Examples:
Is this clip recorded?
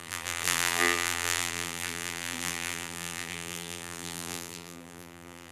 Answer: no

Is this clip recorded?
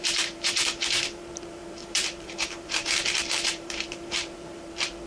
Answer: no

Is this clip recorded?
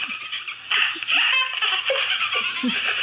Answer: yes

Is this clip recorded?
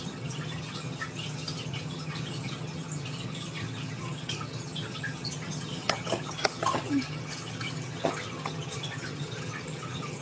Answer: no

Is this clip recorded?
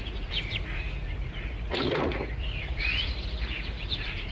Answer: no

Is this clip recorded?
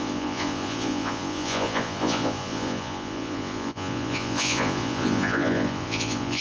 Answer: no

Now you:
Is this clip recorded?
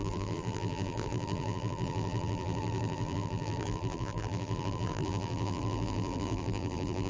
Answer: no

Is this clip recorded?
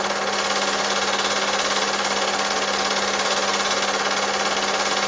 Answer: yes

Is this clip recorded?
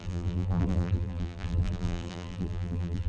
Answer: no